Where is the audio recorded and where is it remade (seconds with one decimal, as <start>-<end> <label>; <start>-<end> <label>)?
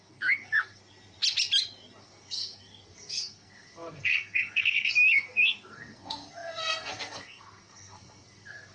0.0-0.8 remade; 0.8-2.0 recorded; 2.0-8.7 remade